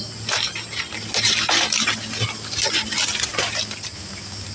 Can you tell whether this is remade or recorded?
recorded